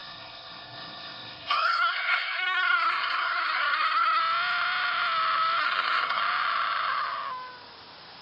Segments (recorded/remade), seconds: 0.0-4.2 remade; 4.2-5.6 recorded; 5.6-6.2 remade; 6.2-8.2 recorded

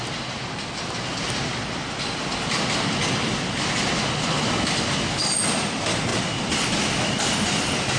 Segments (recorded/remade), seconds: 0.0-8.0 recorded